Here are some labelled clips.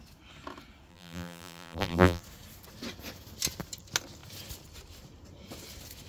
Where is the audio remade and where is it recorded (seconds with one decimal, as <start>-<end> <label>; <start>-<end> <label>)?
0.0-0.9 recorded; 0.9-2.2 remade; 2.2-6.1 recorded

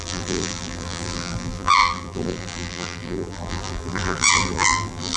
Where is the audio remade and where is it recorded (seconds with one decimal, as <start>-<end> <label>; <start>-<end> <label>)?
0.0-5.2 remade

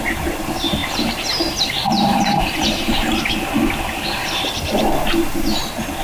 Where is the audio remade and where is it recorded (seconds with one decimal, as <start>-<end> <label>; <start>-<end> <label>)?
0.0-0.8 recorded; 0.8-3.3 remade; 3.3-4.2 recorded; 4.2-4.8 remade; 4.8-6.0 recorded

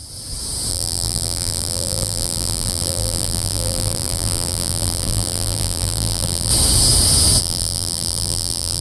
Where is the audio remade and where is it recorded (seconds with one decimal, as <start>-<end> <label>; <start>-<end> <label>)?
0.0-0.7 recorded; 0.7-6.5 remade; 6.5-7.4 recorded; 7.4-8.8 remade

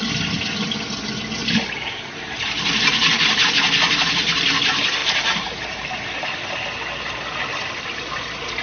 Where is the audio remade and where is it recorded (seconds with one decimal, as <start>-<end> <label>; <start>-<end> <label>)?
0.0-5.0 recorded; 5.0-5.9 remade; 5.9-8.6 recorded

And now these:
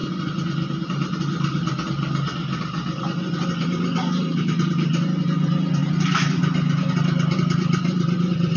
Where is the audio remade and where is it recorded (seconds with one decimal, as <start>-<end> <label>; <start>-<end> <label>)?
0.0-8.6 recorded

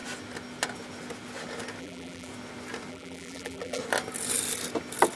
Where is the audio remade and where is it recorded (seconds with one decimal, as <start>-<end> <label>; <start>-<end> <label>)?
0.0-1.8 recorded; 1.8-2.3 remade; 2.3-2.9 recorded; 2.9-3.8 remade; 3.8-5.2 recorded